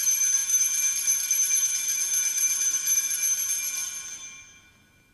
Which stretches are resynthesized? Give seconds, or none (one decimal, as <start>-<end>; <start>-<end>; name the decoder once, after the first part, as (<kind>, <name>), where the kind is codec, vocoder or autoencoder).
none